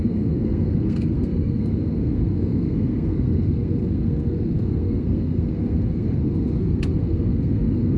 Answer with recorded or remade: remade